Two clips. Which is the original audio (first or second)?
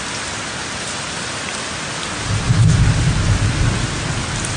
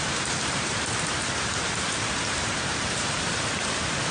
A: first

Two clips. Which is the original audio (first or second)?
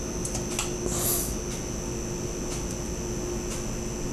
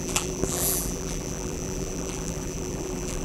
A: first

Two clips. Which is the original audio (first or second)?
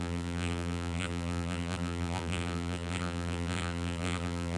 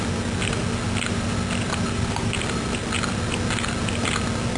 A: second